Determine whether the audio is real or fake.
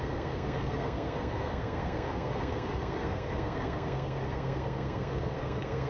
fake